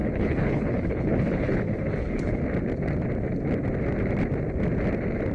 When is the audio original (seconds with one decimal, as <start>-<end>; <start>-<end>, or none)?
2.4-5.3